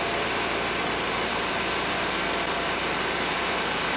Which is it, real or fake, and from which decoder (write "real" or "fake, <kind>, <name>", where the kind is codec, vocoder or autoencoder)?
fake, vocoder, BigVGAN v2